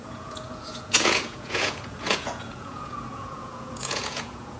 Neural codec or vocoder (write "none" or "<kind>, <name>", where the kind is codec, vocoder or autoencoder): vocoder, Vocos